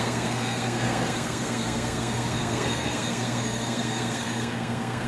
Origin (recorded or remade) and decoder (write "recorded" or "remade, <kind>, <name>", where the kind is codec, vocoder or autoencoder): remade, codec, SNAC